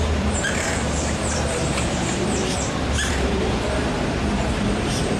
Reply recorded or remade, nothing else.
remade